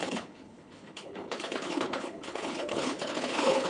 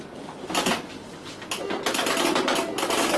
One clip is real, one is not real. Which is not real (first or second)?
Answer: first